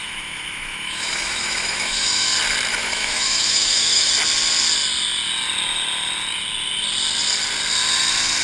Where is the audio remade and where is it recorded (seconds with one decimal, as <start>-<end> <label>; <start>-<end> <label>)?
0.0-2.3 remade; 2.3-2.7 recorded; 2.7-4.1 remade; 4.1-8.4 recorded